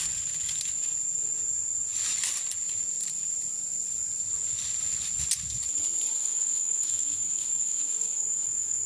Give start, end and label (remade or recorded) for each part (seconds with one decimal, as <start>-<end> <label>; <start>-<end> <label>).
0.0-6.2 recorded; 6.2-8.9 remade